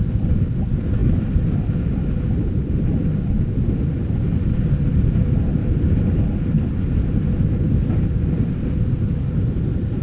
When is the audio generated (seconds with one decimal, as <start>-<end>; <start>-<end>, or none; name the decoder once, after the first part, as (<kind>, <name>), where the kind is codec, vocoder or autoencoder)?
none